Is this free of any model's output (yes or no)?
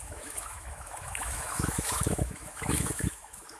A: no